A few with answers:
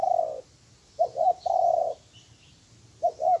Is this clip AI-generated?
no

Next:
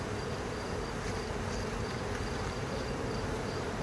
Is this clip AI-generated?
no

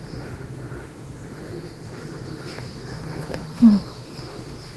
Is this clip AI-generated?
yes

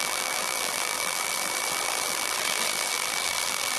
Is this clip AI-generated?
yes